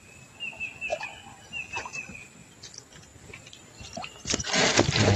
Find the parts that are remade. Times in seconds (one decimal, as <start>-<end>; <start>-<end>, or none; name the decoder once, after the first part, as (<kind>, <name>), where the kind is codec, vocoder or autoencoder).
3.1-4.4 (vocoder, BigVGAN v2)